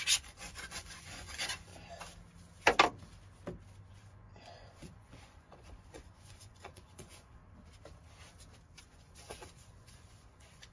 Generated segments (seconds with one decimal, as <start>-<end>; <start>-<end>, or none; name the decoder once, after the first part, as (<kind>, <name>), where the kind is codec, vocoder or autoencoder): 0.0-1.7 (vocoder, Vocos); 3.9-7.4; 8.8-10.7

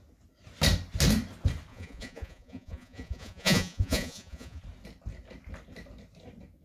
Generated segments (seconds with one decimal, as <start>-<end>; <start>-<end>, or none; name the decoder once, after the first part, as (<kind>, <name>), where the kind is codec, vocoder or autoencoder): 1.7-4.6 (vocoder, Vocos)

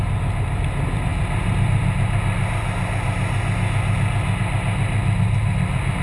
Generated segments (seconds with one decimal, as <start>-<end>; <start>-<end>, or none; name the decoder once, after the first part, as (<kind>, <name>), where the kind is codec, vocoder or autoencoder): none

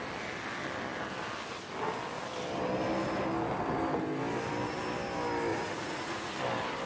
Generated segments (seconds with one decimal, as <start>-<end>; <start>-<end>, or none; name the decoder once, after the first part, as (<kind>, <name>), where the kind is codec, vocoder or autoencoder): 5.5-6.3 (vocoder, Vocos)

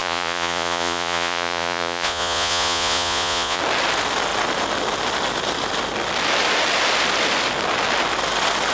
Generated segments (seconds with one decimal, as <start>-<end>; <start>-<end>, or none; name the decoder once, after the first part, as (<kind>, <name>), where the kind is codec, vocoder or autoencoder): 0.0-3.6 (vocoder, Vocos)

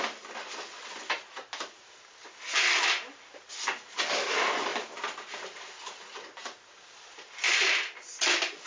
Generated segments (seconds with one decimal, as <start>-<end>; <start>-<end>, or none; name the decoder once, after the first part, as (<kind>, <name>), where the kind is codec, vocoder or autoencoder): none